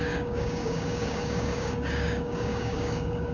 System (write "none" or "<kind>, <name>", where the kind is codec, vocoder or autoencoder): codec, DAC